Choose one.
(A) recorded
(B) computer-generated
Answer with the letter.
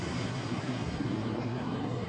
B